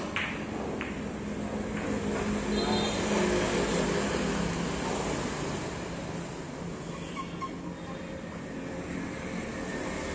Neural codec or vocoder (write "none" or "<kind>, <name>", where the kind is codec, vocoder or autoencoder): none